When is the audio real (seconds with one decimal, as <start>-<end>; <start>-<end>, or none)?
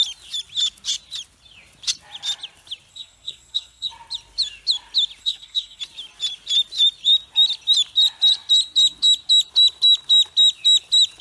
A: 0.0-2.9; 3.9-5.2; 5.8-11.2